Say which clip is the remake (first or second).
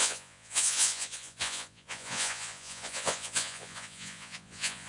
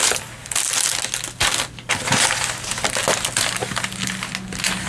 first